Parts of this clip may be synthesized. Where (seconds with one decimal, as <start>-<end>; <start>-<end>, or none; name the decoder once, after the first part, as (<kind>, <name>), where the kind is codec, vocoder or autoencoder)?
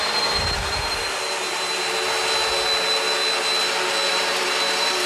0.0-1.0 (vocoder, BigVGAN v2); 4.1-5.1